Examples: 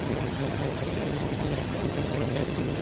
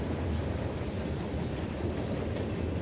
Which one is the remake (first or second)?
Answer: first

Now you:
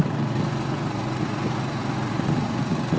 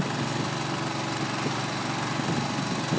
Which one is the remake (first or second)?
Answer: first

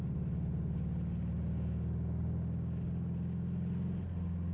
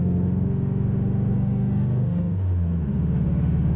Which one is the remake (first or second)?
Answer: second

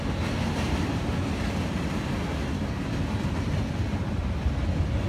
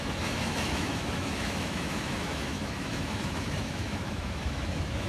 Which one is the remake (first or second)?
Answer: second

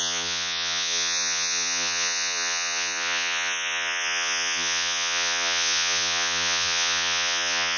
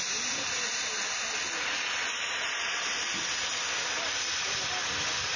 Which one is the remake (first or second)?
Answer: first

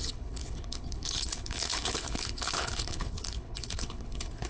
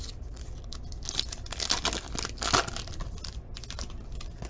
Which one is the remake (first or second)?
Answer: first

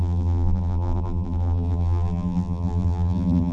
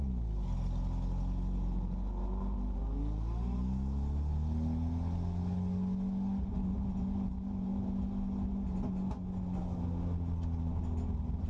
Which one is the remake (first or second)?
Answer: first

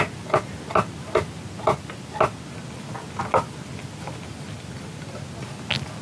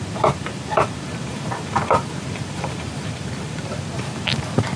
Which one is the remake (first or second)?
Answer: second